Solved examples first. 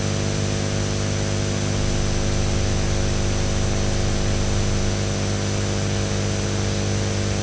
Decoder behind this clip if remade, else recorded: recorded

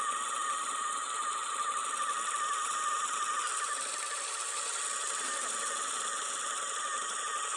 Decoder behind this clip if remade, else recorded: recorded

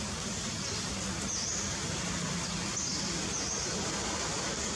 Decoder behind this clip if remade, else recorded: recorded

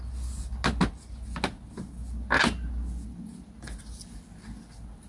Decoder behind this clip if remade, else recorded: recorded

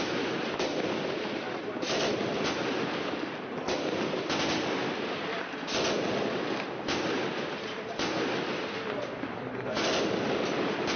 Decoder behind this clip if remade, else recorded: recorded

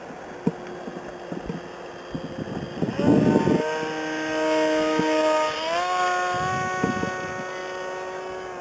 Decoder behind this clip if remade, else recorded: recorded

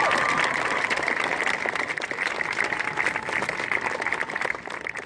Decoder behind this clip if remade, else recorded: recorded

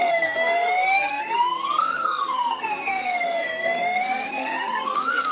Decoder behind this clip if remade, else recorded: remade, codec, SNAC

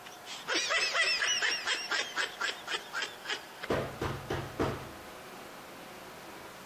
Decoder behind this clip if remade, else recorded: recorded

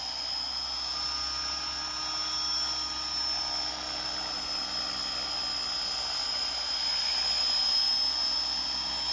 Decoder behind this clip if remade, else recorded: recorded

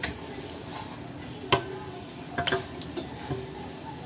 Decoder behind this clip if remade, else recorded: recorded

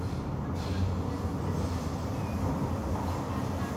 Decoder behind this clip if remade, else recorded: recorded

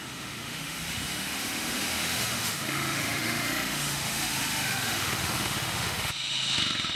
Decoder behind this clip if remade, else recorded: remade, autoencoder, DAC-VAE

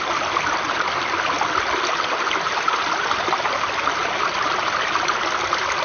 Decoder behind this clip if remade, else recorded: recorded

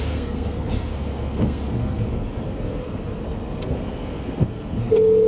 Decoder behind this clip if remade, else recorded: remade, codec, SNAC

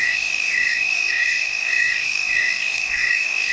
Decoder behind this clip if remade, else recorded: remade, codec, DAC